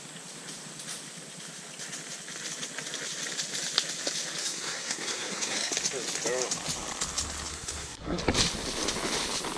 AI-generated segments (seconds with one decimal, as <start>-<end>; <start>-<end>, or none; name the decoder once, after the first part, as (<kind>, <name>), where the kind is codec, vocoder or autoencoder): 4.4-5.7 (codec, SNAC); 7.5-8.2